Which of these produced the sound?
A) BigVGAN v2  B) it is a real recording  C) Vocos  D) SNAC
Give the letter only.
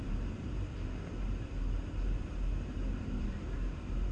A